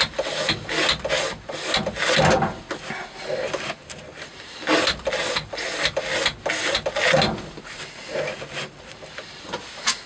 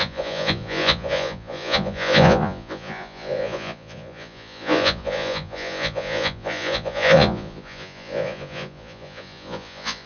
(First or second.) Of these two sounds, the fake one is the second